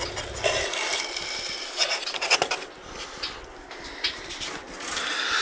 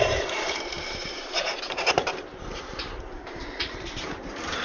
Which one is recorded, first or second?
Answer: first